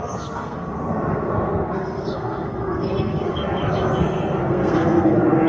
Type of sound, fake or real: fake